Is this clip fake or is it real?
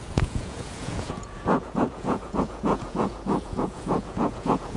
fake